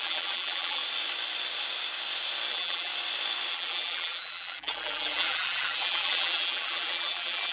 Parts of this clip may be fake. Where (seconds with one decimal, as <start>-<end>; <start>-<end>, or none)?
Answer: 0.0-0.8; 2.5-2.9; 3.5-7.5

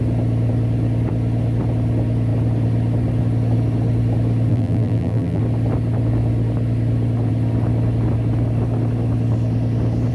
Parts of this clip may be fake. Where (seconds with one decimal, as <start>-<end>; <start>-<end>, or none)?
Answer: 4.5-5.4

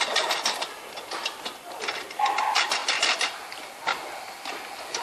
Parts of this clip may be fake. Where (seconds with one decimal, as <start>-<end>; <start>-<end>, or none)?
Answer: none

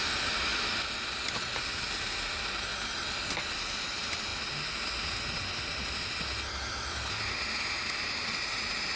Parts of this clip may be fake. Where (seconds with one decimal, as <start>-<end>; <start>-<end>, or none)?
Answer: 0.0-2.7; 3.5-4.3

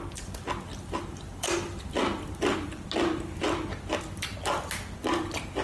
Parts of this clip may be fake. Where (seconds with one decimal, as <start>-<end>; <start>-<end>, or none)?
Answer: none

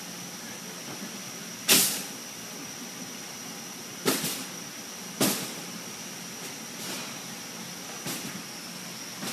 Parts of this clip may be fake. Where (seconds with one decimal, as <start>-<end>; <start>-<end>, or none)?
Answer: none

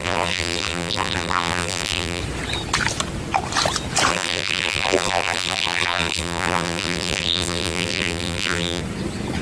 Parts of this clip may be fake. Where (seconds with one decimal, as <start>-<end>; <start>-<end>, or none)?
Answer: 0.0-2.2; 4.1-8.8